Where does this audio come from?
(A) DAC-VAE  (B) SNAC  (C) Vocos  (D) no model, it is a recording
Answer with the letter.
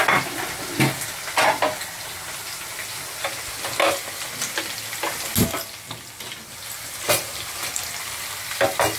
D